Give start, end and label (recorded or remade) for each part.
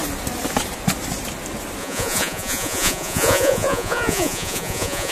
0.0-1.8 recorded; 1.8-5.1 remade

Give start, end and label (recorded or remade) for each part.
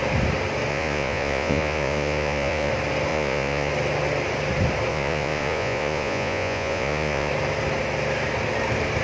0.0-0.7 recorded; 0.7-2.7 remade; 2.7-3.1 recorded; 3.1-3.7 remade; 3.7-4.9 recorded; 4.9-7.3 remade; 7.3-9.0 recorded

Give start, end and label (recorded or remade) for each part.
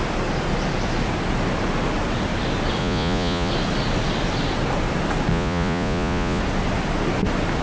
0.0-2.8 recorded; 2.8-3.5 remade; 3.5-5.3 recorded; 5.3-6.4 remade; 6.4-7.6 recorded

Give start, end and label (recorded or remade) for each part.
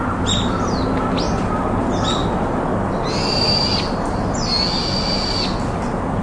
0.0-6.2 recorded